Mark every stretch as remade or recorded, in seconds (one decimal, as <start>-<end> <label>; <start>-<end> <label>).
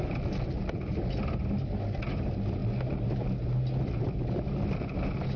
0.0-5.4 recorded